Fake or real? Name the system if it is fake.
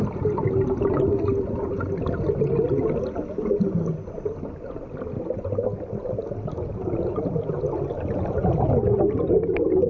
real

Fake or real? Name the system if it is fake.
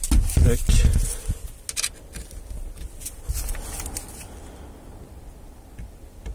real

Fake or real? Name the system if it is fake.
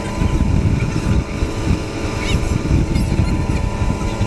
real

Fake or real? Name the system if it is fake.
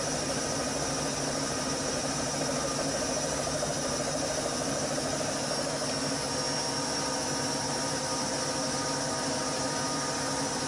real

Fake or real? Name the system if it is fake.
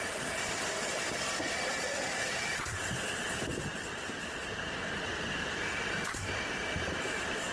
fake, vocoder, BigVGAN v2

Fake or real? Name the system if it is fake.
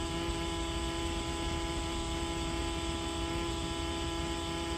real